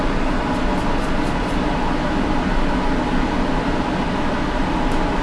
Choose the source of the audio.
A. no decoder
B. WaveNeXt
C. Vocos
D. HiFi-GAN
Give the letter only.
A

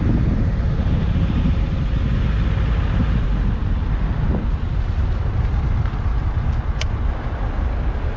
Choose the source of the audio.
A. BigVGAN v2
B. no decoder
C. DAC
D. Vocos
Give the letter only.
B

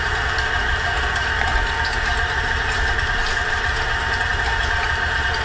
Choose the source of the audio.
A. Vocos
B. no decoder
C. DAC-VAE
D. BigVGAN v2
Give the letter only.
D